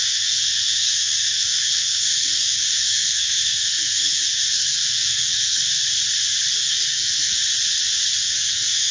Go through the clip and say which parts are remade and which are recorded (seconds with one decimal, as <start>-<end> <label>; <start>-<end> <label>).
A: 0.0-5.8 remade; 5.8-6.5 recorded; 6.5-7.4 remade; 7.4-8.2 recorded; 8.2-8.9 remade